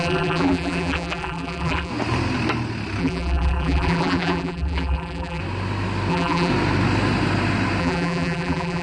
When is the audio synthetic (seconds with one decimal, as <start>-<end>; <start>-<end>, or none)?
0.0-1.9; 3.0-5.4; 6.1-6.5; 7.8-8.8